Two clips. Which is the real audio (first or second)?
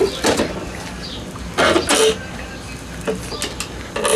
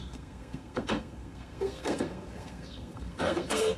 first